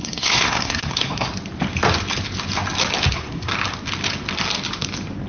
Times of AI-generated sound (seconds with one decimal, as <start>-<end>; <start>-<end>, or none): 0.0-1.3; 3.1-3.5